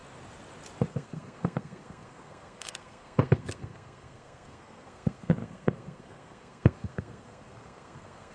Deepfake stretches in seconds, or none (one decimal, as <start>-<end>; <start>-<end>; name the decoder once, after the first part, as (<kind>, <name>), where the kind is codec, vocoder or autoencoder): 0.9-8.3 (codec, SNAC)